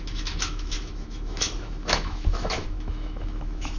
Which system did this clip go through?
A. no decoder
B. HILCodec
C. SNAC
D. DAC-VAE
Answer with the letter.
D